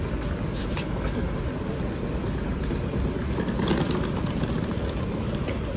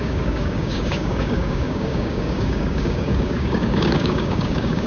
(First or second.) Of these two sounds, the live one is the first